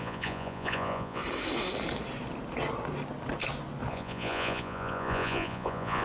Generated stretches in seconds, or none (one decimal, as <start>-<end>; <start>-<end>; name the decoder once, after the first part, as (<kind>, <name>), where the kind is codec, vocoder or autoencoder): 0.0-1.2 (vocoder, Vocos); 3.9-6.0